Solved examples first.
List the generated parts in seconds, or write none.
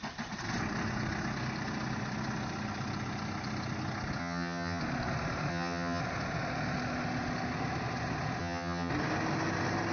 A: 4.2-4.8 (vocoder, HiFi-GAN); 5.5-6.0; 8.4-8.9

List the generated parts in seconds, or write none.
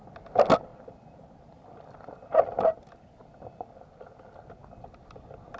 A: none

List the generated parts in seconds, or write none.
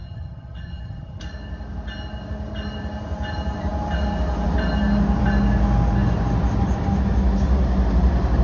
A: 0.0-1.2 (vocoder, HiFi-GAN)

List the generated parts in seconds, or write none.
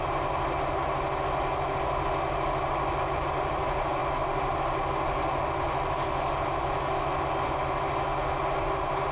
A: none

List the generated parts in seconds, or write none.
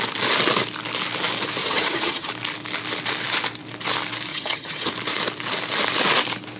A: 1.6-2.3 (vocoder, HiFi-GAN); 4.3-4.9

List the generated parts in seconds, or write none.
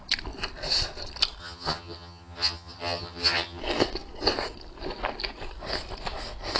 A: 1.4-3.6 (vocoder, HiFi-GAN)